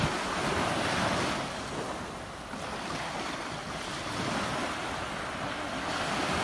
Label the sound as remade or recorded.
recorded